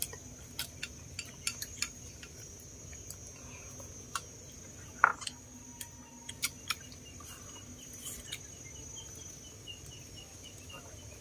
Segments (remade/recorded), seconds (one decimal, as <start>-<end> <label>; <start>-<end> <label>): 0.0-10.3 recorded; 10.3-11.2 remade